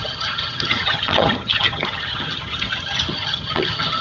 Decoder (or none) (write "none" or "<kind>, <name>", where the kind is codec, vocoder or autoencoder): vocoder, HiFi-GAN